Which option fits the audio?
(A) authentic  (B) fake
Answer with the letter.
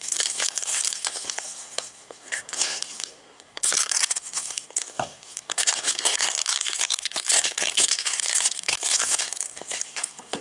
B